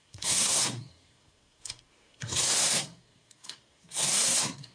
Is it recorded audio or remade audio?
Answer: remade